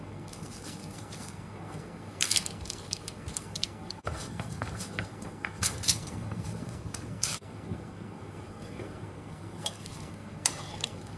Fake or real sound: fake